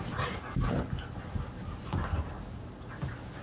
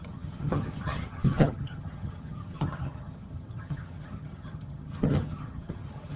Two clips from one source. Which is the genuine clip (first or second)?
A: first